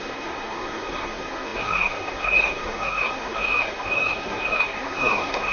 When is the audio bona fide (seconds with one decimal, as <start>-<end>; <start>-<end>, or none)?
none

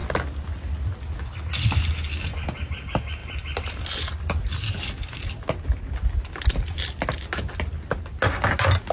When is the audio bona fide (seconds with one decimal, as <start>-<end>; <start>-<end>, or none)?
0.0-8.9

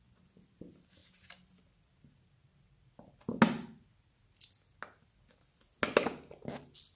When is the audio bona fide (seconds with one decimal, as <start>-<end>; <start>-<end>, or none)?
0.0-7.0

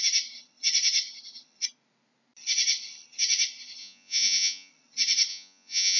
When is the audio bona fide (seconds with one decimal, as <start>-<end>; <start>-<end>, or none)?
0.0-3.8; 4.7-5.3

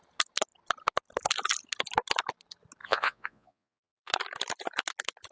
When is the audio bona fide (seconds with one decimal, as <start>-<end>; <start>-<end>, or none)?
0.0-2.8; 4.1-5.3

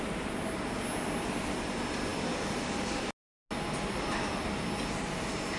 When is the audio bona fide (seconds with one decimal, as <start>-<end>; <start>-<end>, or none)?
0.0-5.6